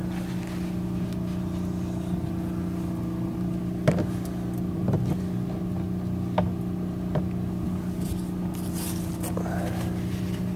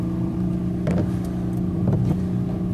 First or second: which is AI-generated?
second